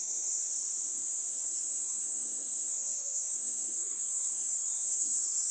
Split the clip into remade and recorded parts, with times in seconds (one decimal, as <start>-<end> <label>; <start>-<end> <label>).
0.0-0.5 remade; 0.5-1.3 recorded; 1.3-5.5 remade